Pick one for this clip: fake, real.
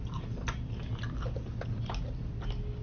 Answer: real